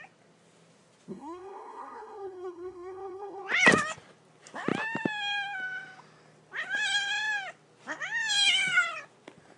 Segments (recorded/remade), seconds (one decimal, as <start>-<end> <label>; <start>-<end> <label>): 0.0-1.1 recorded; 1.1-3.4 remade; 3.4-9.6 recorded